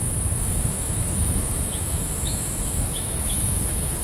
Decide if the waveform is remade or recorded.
remade